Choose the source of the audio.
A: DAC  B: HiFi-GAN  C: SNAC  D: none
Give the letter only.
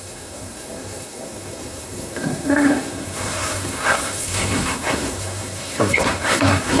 C